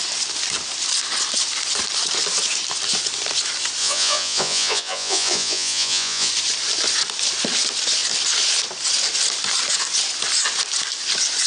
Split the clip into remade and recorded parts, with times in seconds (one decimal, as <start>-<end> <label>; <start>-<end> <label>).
0.0-3.8 recorded; 3.8-6.3 remade; 6.3-11.5 recorded